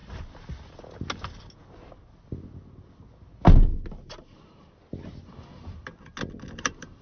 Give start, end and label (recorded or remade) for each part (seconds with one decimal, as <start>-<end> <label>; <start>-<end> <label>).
0.0-7.0 recorded